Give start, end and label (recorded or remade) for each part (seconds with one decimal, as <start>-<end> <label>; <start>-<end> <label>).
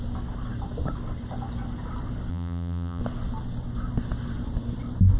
0.0-2.3 recorded; 2.3-3.0 remade; 3.0-5.2 recorded